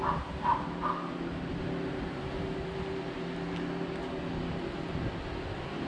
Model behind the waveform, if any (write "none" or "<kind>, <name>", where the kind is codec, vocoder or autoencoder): none